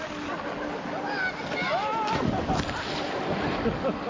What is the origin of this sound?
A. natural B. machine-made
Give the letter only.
A